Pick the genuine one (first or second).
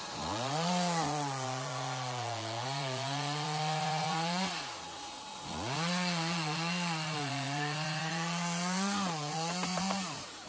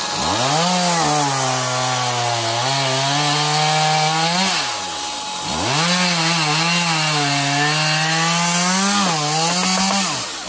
second